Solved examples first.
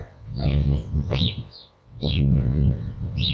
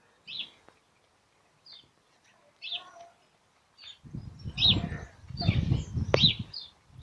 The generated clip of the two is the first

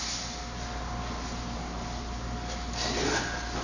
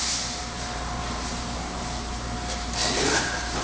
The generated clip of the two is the second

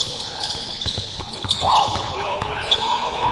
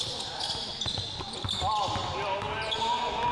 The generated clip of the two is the first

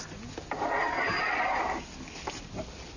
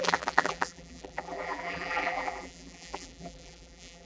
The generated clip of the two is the second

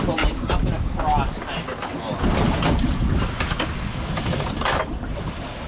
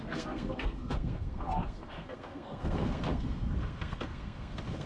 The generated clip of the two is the second